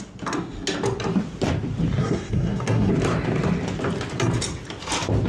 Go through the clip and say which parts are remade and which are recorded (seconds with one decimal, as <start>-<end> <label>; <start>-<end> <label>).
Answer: 0.0-2.0 recorded; 2.0-2.9 remade; 2.9-5.3 recorded